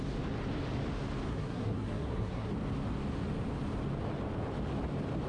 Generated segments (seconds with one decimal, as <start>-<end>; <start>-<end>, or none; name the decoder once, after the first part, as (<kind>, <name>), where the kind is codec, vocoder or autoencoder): 1.3-2.5 (codec, SNAC)